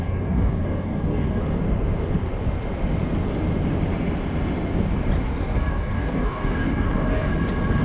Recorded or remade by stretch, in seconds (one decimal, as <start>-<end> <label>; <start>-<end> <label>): 0.0-1.4 remade; 1.4-5.7 recorded; 5.7-7.3 remade; 7.3-7.8 recorded